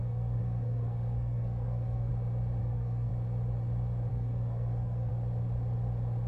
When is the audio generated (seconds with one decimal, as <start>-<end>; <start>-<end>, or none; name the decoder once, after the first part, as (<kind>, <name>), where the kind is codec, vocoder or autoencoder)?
0.0-2.1 (codec, SNAC); 2.6-3.1; 4.1-5.1